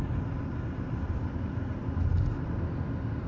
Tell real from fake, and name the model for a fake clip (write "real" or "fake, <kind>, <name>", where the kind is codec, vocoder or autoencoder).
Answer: real